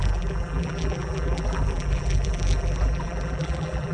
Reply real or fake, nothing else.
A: fake